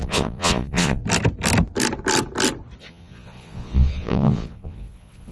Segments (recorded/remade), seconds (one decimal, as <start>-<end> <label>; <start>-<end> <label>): 0.0-1.0 remade; 1.0-2.8 recorded; 2.8-5.3 remade